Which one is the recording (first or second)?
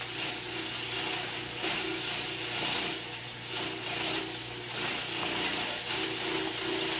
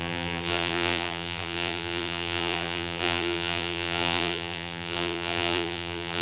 first